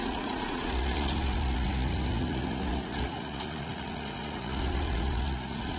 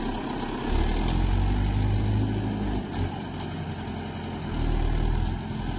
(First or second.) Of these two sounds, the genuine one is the second